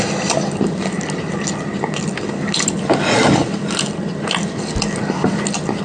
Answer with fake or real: real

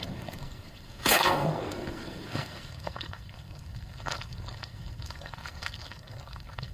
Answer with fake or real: fake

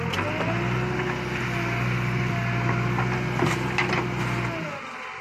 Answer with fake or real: real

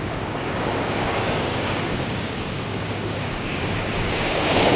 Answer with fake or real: fake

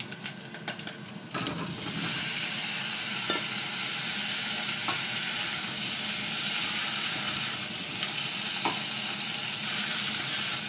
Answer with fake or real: real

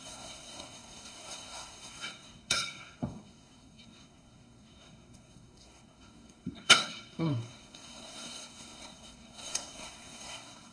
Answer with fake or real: fake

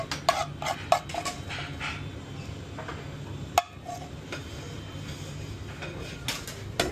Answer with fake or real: real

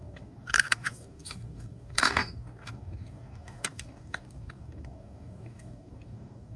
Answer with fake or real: fake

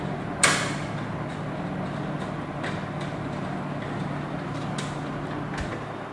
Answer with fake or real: real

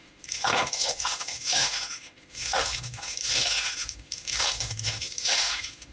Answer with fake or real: fake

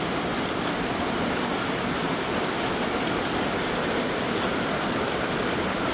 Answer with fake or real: real